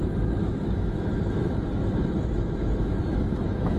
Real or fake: fake